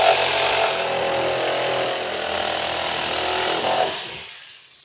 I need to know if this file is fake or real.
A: real